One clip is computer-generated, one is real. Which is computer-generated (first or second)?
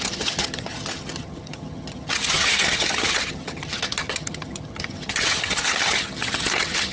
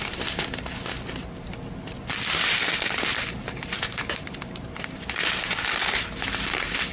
first